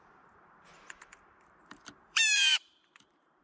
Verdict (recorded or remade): remade